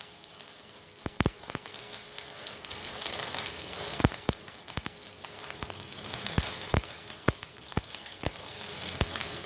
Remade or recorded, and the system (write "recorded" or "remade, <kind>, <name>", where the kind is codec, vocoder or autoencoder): remade, codec, SNAC